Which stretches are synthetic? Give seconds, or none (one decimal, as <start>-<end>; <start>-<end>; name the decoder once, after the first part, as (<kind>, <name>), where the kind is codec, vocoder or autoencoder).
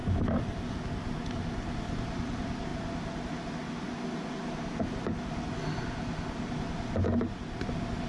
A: none